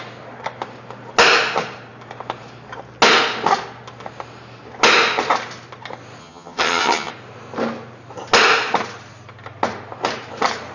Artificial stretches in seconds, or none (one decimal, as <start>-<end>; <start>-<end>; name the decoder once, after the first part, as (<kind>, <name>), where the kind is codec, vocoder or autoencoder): 6.2-7.1 (vocoder, HiFi-GAN)